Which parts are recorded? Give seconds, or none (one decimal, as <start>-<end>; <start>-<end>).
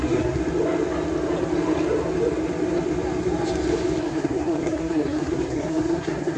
0.4-4.0